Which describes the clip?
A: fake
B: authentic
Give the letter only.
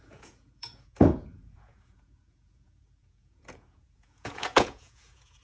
A